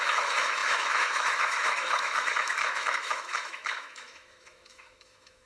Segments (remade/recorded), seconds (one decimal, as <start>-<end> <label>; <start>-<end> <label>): 0.0-5.5 remade